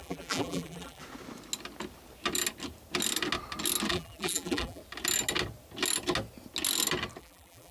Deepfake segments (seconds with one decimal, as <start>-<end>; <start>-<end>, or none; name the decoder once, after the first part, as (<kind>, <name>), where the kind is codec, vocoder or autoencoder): 0.0-1.0 (vocoder, BigVGAN v2); 3.9-4.8; 7.2-7.7